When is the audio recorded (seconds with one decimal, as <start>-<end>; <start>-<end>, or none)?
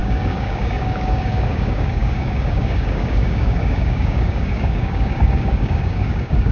none